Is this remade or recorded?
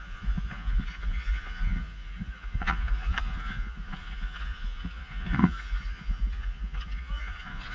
remade